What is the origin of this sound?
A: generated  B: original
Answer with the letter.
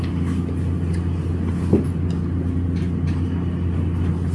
B